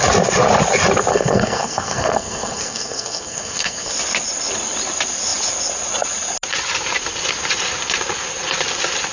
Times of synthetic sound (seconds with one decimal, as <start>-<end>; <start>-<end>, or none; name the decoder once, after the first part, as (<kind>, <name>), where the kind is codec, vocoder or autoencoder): 1.1-3.9 (codec, SNAC)